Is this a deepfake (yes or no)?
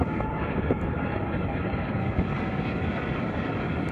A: yes